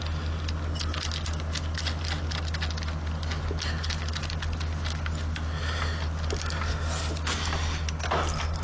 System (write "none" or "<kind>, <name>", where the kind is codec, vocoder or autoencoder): none